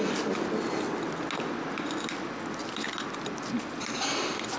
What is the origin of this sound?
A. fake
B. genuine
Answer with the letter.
B